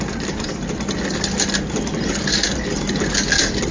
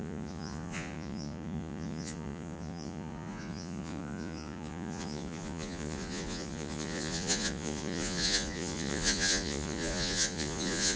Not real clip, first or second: second